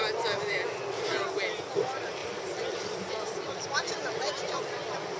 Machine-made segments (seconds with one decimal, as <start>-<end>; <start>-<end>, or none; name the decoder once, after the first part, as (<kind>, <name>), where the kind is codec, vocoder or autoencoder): 0.0-0.7 (vocoder, BigVGAN v2); 2.2-4.6